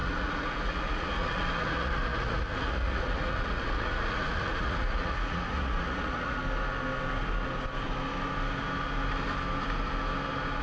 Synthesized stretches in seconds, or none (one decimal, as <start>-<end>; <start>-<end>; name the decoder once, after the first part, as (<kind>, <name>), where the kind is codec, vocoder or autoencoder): 0.0-6.4 (vocoder, Vocos)